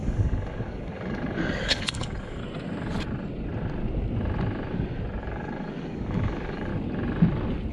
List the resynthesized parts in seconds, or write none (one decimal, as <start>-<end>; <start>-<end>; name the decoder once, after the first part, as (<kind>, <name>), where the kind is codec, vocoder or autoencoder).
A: 0.0-2.4 (codec, DAC); 5.2-6.7